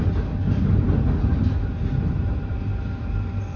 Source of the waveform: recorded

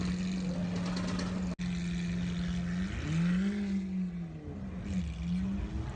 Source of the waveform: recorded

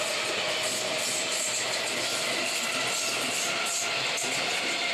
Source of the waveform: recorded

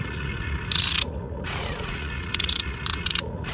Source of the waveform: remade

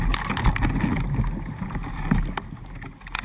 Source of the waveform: recorded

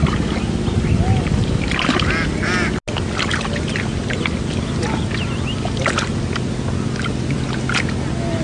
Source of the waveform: recorded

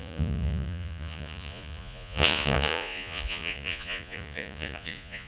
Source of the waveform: remade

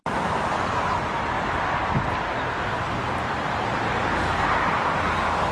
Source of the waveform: recorded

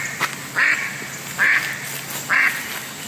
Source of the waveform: recorded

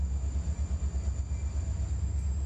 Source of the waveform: recorded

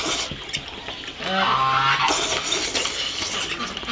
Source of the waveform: recorded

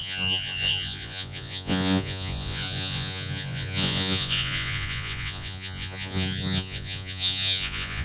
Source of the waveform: remade